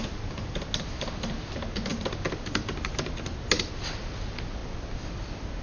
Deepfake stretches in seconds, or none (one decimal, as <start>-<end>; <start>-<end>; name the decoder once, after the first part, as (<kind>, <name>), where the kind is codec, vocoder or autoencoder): none